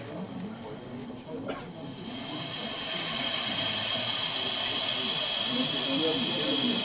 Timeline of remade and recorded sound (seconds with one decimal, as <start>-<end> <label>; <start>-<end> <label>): 0.0-1.0 recorded; 1.0-4.3 remade; 4.3-6.8 recorded